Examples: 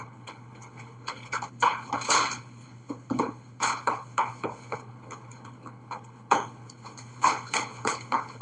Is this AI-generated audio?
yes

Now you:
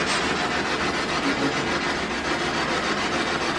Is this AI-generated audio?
no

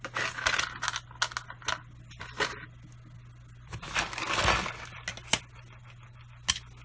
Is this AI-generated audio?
no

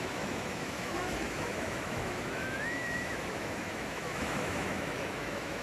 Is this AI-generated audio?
yes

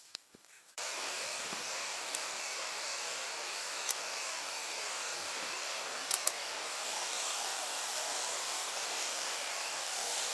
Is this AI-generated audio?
yes